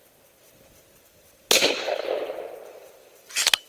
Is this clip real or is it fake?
real